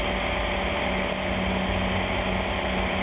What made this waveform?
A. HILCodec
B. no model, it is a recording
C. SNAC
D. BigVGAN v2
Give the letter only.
B